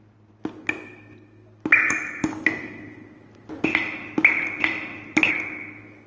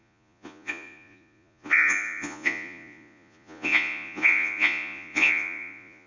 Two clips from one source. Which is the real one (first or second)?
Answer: first